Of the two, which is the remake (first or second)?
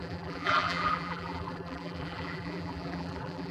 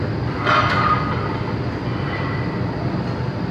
first